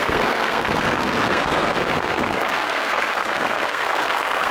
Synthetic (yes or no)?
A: yes